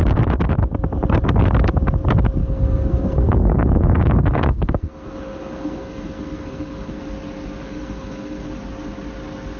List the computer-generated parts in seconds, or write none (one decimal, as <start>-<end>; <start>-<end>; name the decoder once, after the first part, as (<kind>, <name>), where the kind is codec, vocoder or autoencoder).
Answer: 2.4-7.0 (codec, SNAC); 7.6-8.5